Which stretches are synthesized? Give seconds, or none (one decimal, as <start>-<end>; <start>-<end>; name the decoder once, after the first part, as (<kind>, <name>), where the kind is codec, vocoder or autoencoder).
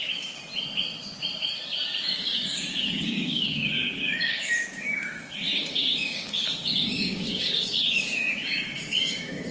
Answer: 0.0-0.4 (codec, DAC); 2.0-9.5